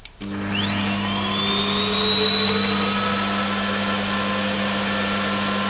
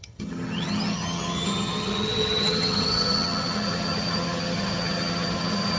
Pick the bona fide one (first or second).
first